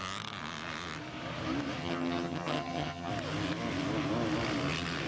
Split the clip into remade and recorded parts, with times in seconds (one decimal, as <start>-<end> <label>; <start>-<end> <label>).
0.0-1.8 recorded; 1.8-3.1 remade; 3.1-5.1 recorded